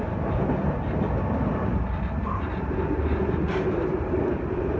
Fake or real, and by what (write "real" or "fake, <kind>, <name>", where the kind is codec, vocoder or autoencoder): real